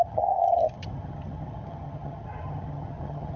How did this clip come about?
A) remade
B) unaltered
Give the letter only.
A